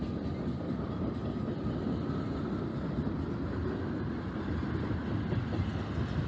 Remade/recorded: recorded